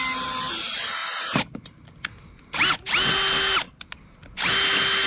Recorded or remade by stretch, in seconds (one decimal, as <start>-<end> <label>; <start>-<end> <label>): 0.0-5.1 recorded